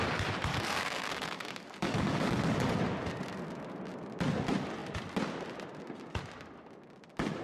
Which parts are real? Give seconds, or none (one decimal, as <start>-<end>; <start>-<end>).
0.0-0.5; 2.7-7.4